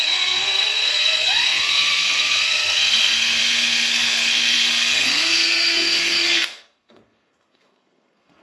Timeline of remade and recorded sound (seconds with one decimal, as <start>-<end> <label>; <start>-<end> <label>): 0.0-8.4 remade